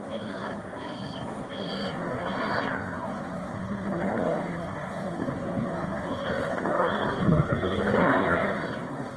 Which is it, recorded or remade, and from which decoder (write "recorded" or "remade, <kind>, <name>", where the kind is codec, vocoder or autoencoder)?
remade, codec, SNAC